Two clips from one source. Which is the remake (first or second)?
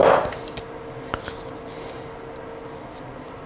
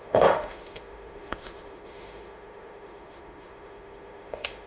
second